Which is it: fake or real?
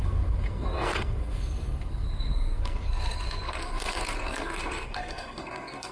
fake